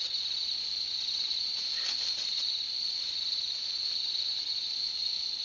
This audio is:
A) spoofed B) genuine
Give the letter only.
B